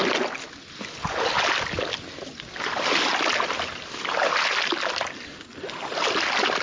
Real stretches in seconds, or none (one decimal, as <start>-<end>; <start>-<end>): 0.0-6.6